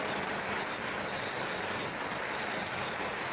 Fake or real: real